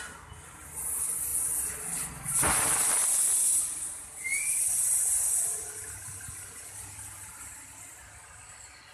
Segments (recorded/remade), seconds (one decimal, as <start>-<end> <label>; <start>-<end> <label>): 0.0-8.9 recorded